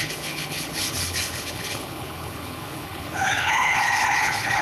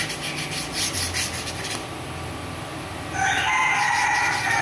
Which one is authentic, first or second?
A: second